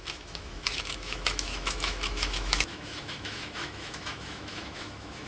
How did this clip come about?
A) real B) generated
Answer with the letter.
B